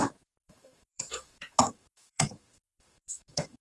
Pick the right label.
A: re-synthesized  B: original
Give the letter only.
A